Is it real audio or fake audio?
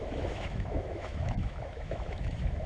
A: fake